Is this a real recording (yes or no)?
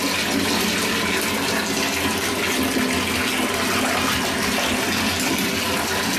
yes